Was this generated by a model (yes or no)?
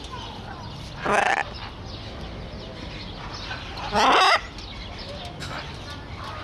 no